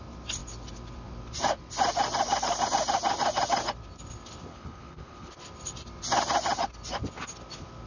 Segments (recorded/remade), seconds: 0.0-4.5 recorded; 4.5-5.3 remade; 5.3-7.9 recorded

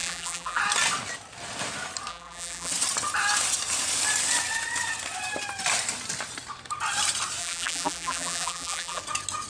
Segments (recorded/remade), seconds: 0.0-0.6 remade; 0.6-2.1 recorded; 2.1-2.7 remade; 2.7-7.4 recorded; 7.4-9.0 remade; 9.0-9.5 recorded

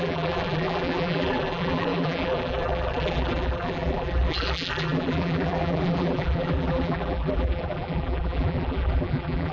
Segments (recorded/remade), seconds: 0.0-9.5 remade

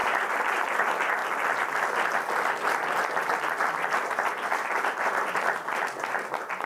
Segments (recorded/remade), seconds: 0.0-0.5 remade; 0.5-6.7 recorded

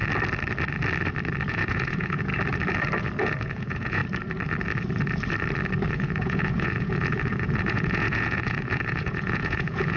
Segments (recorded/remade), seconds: 0.0-1.5 recorded; 1.5-2.3 remade; 2.3-3.2 recorded; 3.2-4.0 remade; 4.0-5.9 recorded; 5.9-10.0 remade

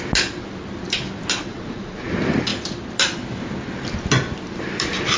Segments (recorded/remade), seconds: 0.0-1.5 recorded; 1.5-2.1 remade; 2.1-5.2 recorded

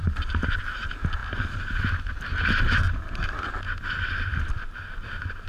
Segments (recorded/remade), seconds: 0.0-1.2 recorded; 1.2-3.5 remade; 3.5-5.5 recorded

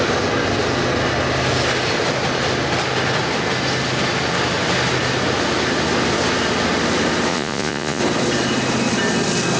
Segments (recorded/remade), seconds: 0.0-7.3 recorded; 7.3-8.0 remade; 8.0-9.6 recorded